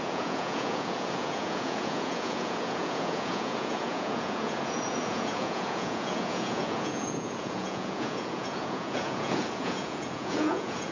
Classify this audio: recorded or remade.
remade